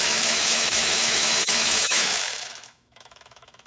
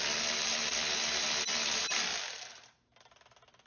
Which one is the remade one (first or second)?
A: first